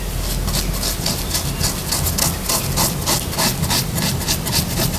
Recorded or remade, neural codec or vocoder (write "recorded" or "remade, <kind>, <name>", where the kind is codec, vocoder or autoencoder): recorded